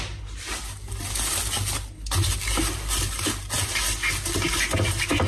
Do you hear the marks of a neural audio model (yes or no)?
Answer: no